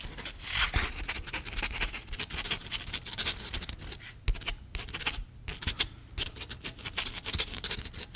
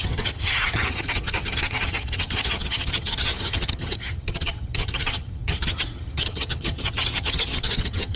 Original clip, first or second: first